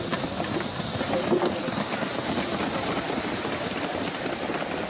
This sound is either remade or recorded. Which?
recorded